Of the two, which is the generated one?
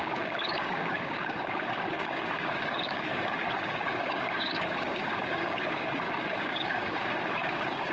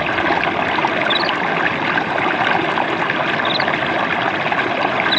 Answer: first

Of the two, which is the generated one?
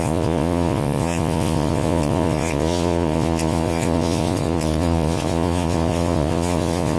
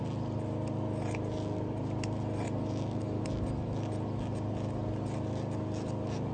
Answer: first